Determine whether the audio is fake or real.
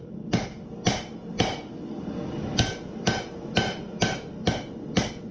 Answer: real